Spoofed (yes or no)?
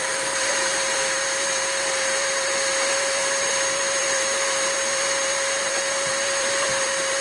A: yes